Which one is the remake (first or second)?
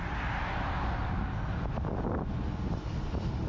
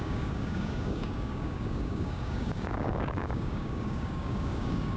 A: second